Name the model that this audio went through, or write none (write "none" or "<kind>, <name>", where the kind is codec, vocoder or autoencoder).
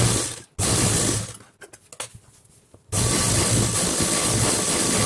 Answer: none